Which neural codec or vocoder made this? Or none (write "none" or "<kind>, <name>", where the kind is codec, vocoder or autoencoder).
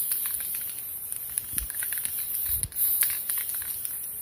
none